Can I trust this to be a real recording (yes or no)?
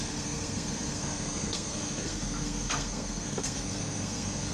no